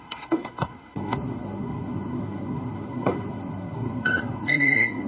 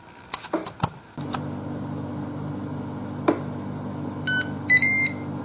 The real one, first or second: second